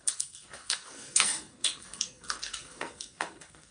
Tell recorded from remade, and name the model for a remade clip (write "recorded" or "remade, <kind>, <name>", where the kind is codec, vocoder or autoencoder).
remade, codec, SNAC